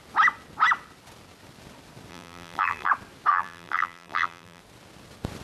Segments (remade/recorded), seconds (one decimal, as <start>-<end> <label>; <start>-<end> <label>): 0.0-2.1 recorded; 2.1-2.9 remade; 2.9-3.3 recorded; 3.3-4.6 remade; 4.6-5.4 recorded